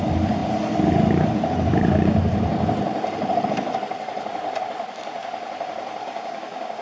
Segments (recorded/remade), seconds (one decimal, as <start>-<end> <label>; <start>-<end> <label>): 0.0-6.0 recorded; 6.0-6.8 remade